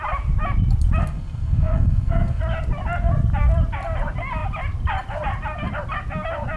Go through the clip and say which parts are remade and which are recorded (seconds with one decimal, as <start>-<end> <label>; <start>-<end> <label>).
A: 0.0-1.0 recorded; 1.0-2.4 remade; 2.4-6.6 recorded